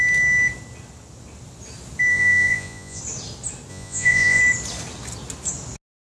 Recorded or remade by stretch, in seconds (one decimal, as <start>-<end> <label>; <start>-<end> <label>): 0.0-2.1 recorded; 2.1-3.0 remade; 3.0-3.7 recorded; 3.7-4.4 remade; 4.4-6.0 recorded